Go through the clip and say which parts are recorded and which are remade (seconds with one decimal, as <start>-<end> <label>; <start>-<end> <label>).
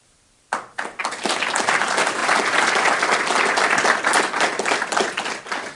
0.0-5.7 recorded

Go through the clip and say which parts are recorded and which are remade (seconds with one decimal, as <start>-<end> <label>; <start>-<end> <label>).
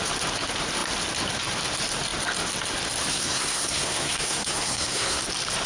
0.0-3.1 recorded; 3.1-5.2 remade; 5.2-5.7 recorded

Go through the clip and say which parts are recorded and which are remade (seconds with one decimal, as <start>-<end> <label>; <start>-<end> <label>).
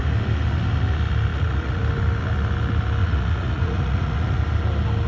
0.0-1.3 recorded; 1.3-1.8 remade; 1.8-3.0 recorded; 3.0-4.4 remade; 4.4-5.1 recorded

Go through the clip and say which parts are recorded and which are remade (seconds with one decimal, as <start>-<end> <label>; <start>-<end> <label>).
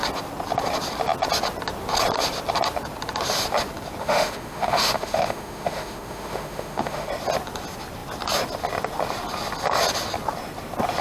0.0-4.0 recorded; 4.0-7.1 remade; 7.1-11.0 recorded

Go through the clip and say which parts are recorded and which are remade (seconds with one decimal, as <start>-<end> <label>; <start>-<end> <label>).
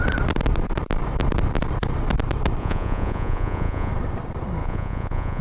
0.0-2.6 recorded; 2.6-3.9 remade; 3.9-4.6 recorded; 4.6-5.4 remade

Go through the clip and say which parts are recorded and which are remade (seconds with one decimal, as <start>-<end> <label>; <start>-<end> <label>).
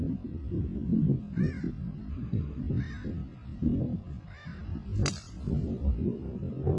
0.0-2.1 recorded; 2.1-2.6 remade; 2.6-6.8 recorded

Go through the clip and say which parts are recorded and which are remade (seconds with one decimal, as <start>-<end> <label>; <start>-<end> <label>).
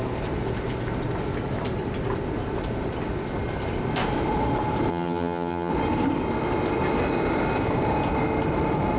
0.0-4.9 recorded; 4.9-5.7 remade; 5.7-9.0 recorded